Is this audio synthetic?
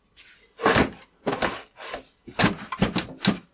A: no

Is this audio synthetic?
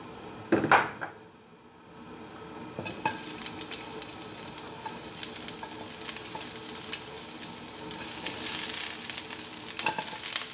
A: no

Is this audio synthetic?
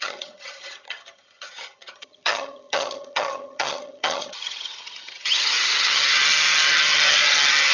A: yes